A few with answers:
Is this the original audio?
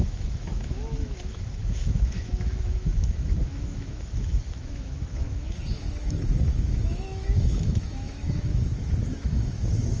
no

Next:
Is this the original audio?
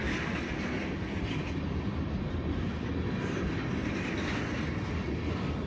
yes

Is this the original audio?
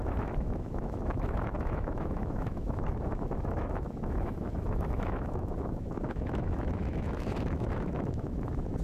no